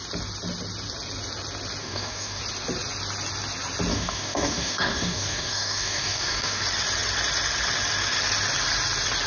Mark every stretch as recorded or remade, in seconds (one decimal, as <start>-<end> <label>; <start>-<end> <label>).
0.0-1.8 recorded; 1.8-2.4 remade; 2.4-3.9 recorded; 3.9-6.6 remade; 6.6-9.3 recorded